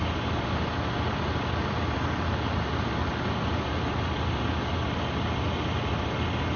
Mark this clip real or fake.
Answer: real